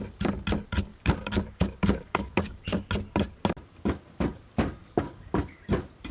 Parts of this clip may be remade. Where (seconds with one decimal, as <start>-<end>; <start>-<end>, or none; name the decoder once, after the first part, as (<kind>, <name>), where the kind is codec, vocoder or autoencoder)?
0.9-2.9 (codec, DAC); 4.8-5.6